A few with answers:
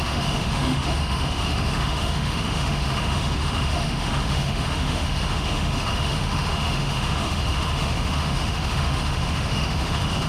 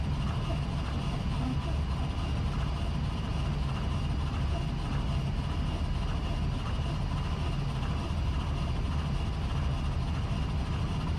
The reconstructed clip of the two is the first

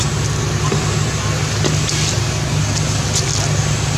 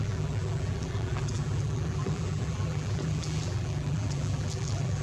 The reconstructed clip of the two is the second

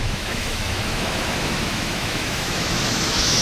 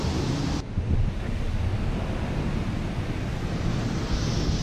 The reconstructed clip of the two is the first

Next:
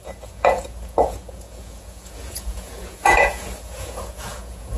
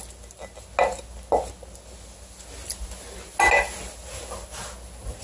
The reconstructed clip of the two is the first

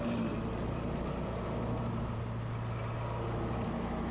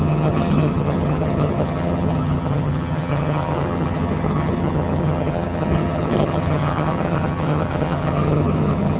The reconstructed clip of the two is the second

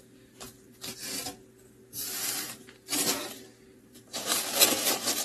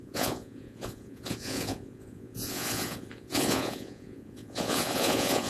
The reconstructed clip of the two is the second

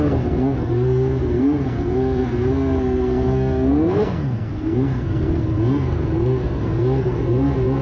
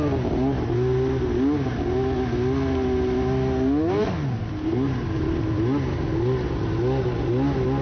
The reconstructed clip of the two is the first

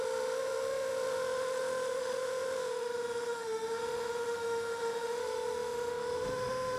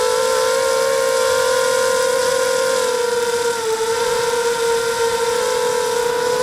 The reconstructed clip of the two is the first